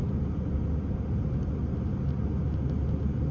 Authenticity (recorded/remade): recorded